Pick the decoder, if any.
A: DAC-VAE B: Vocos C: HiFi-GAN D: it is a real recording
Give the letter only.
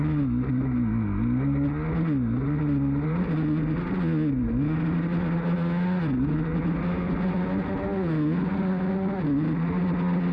D